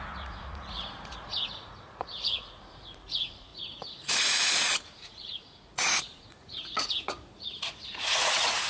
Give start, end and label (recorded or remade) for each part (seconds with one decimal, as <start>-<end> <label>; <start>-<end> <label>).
0.0-8.7 remade